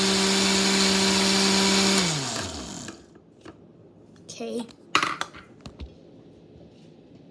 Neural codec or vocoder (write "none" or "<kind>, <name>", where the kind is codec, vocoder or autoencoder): none